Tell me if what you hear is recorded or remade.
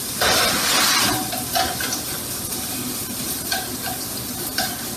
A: recorded